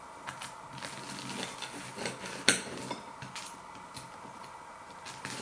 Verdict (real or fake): real